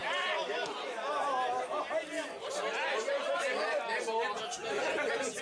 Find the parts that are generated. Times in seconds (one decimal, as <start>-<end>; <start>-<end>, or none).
0.0-1.1; 2.0-3.1